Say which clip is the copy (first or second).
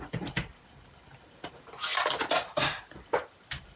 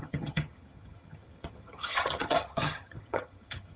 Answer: second